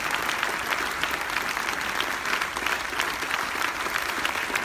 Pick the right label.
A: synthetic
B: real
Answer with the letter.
B